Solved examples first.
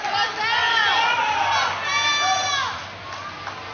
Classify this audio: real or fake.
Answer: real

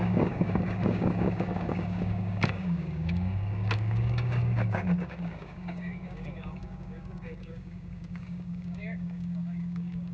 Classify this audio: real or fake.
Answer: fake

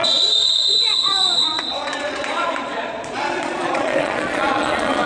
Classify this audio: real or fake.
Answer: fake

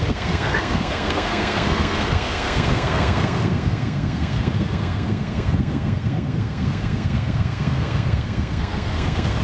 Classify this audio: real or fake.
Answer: fake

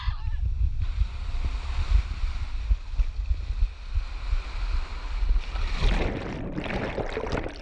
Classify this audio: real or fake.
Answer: real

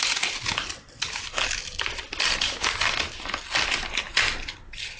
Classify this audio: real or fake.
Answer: real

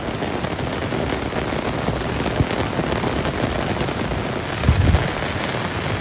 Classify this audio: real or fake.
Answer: real